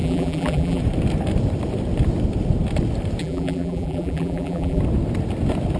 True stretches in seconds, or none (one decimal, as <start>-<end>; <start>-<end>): 0.8-3.2; 4.8-5.8